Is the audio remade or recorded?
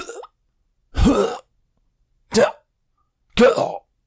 recorded